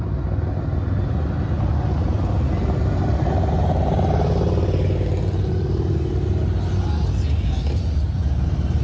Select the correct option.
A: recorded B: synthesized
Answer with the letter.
A